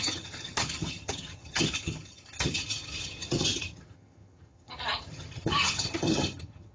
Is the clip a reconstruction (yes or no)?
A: yes